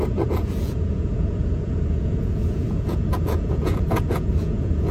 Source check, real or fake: fake